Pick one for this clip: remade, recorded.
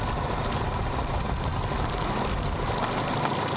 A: recorded